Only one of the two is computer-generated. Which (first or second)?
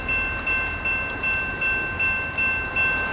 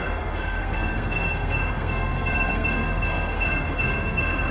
second